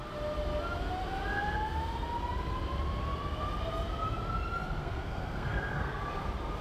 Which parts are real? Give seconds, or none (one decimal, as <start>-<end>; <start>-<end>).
0.0-4.8; 6.0-6.6